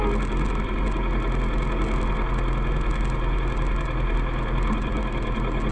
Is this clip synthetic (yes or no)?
no